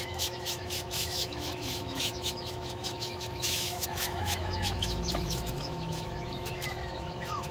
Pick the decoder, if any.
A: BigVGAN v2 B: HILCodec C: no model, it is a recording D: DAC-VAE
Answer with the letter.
D